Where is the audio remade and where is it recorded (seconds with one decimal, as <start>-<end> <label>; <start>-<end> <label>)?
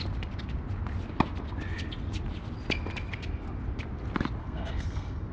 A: 0.0-4.4 recorded; 4.4-5.3 remade